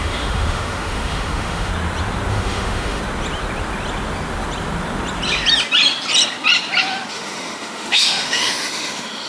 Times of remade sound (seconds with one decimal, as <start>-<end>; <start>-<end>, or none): 0.0-1.7; 2.3-3.0; 7.1-9.3